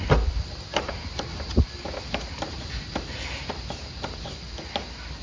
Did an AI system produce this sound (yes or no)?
no